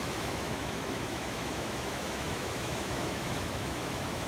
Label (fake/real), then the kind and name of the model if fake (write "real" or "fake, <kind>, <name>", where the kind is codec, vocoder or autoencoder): fake, autoencoder, DAC-VAE